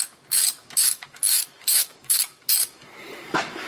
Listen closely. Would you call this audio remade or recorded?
remade